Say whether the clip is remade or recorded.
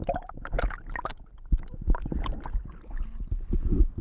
recorded